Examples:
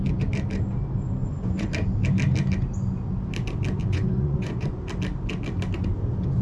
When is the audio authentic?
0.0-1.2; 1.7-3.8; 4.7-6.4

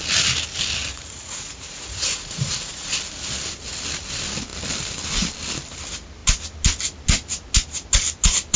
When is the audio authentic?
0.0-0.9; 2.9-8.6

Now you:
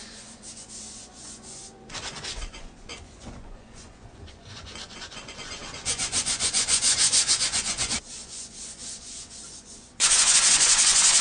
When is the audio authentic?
none

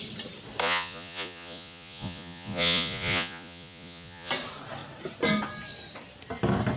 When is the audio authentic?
0.0-0.6; 4.3-6.8

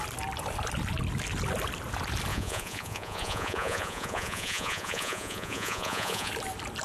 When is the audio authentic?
0.0-2.3; 6.3-6.8